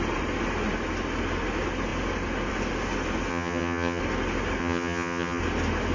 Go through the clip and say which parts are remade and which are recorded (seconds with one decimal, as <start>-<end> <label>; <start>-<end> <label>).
0.0-3.3 recorded; 3.3-4.0 remade; 4.0-4.6 recorded; 4.6-5.4 remade; 5.4-5.9 recorded